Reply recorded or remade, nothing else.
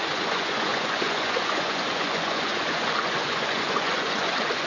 remade